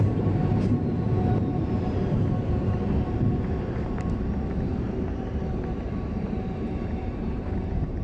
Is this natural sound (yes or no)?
no